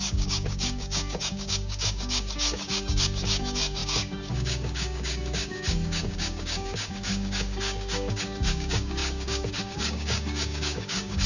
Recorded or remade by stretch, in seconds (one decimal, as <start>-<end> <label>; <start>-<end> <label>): 0.0-11.3 remade